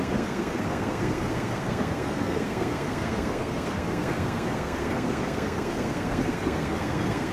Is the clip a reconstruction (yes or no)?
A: yes